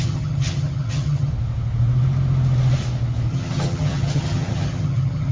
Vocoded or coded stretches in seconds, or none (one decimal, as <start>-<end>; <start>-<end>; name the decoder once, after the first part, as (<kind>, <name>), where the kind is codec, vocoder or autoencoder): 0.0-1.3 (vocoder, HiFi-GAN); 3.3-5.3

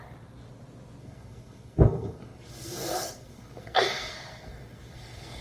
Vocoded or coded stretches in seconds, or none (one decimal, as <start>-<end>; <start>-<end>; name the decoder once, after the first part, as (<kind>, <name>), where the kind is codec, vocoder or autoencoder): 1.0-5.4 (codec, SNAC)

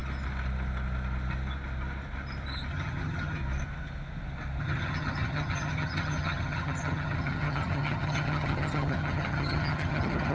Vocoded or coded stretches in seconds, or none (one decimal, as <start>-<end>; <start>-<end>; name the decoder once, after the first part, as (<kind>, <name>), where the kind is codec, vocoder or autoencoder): 2.7-3.4 (vocoder, HiFi-GAN); 4.6-10.3